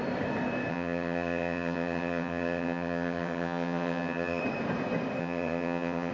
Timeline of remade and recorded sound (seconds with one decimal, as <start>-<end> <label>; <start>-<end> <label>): 0.0-0.7 recorded; 0.7-4.4 remade; 4.4-5.2 recorded; 5.2-6.1 remade